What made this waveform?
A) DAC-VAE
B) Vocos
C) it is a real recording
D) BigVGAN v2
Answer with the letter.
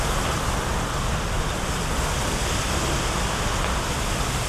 C